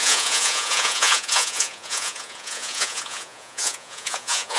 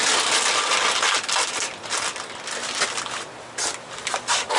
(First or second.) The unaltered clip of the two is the second